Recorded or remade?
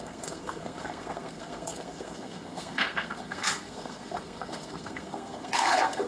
remade